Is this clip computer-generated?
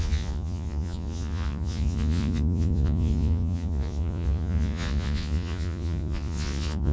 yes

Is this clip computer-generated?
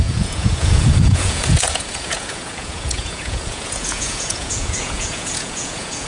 yes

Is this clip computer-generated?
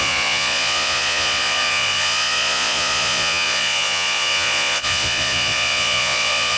yes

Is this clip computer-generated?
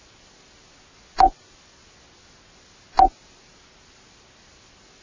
no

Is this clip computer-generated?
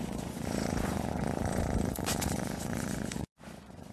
yes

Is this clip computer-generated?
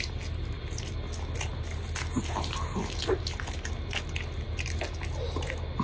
no